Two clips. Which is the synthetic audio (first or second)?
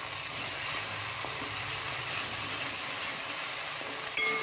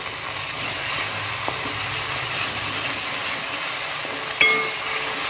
first